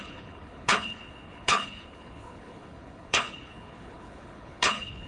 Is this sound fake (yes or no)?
yes